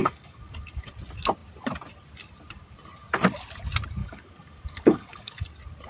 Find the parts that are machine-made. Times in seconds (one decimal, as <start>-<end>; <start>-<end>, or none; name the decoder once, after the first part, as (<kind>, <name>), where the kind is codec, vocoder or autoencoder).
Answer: 0.0-0.9 (codec, DAC); 4.0-5.4